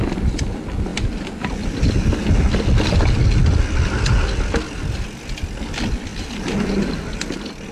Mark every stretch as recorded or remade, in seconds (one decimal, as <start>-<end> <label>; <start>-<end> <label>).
0.0-7.7 recorded